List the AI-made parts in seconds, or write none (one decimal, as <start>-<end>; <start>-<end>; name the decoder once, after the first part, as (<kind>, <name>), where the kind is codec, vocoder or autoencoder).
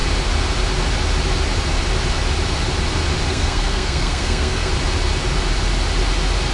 3.3-4.7 (codec, SNAC)